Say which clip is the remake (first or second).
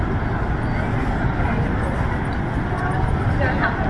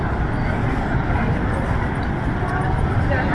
second